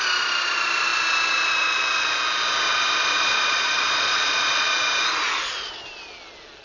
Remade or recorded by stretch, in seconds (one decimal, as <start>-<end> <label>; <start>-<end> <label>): 0.0-3.0 recorded; 3.0-4.7 remade; 4.7-6.6 recorded